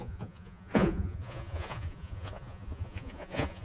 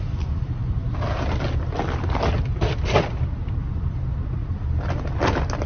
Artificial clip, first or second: first